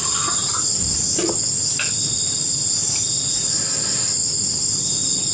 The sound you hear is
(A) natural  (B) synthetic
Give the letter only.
A